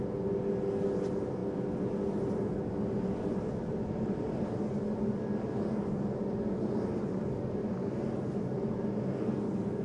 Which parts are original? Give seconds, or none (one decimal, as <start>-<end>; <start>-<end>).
0.0-9.8